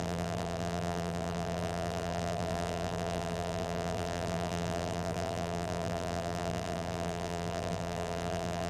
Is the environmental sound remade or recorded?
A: remade